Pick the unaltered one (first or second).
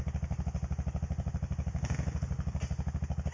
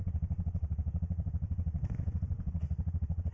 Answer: first